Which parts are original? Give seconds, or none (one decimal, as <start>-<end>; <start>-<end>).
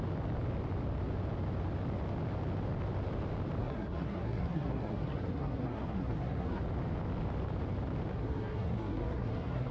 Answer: 0.0-3.6; 6.6-8.1